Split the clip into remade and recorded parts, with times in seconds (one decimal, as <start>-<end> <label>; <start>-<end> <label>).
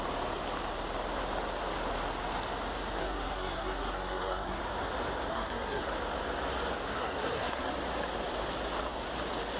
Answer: 0.0-3.0 recorded; 3.0-4.6 remade; 4.6-5.3 recorded; 5.3-5.8 remade; 5.8-6.9 recorded; 6.9-7.7 remade; 7.7-9.6 recorded